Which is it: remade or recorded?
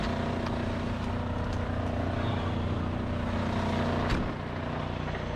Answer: recorded